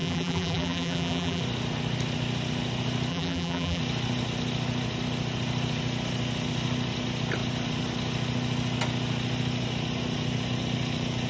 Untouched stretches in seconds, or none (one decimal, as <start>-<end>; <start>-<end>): 1.4-3.1; 3.8-11.3